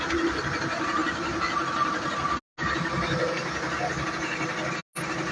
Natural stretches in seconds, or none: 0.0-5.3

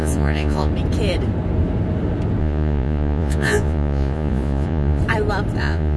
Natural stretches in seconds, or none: 0.7-2.4; 5.0-5.6

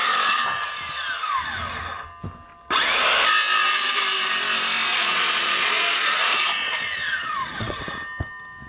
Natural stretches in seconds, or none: 0.0-4.9; 7.8-8.7

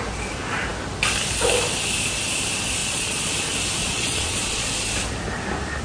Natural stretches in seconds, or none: 0.0-2.8; 3.3-3.8; 4.7-5.8